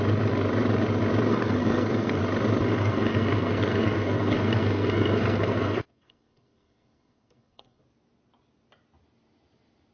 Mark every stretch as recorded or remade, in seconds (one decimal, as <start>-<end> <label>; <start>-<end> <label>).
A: 0.0-1.3 recorded; 1.3-2.2 remade; 2.2-2.8 recorded; 2.8-7.8 remade; 7.8-9.9 recorded